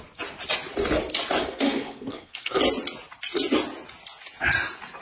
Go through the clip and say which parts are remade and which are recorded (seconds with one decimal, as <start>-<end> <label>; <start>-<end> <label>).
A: 0.0-1.4 recorded; 1.4-2.6 remade; 2.6-5.0 recorded